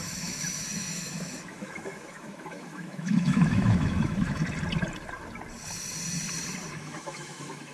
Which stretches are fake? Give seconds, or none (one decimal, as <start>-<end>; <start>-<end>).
0.0-4.4; 6.7-7.7